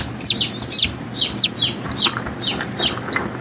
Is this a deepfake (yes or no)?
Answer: no